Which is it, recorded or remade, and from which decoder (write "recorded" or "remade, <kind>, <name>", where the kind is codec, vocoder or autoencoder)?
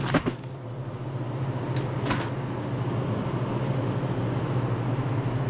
recorded